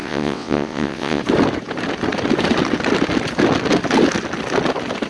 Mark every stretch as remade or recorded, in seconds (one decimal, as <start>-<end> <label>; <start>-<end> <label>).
0.0-1.2 remade; 1.2-5.1 recorded